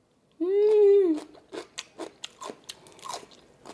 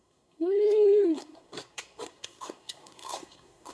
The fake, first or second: second